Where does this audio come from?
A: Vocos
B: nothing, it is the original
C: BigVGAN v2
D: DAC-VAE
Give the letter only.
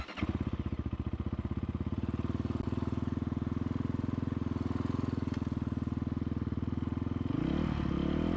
B